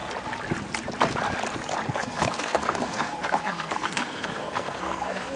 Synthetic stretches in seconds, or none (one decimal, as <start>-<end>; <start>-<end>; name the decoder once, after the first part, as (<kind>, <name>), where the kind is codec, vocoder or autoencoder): 1.9-5.4 (codec, SNAC)